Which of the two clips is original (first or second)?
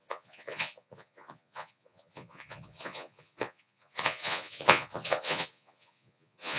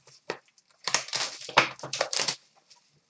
second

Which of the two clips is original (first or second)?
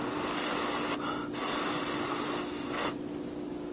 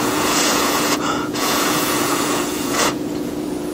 first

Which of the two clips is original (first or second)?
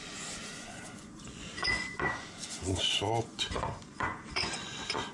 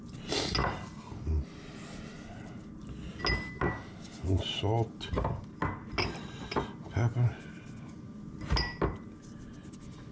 second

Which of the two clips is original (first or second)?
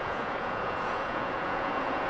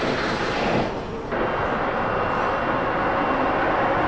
second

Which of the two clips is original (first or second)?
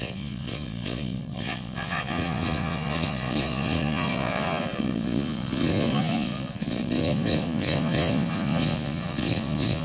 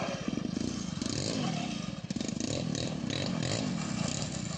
second